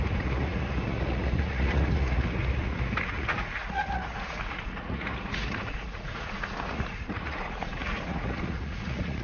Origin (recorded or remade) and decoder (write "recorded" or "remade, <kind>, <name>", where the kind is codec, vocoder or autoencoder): remade, vocoder, Vocos